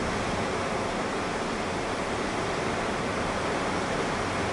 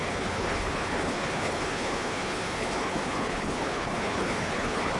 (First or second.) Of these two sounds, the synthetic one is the second